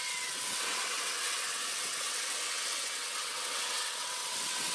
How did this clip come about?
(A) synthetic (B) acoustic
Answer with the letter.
A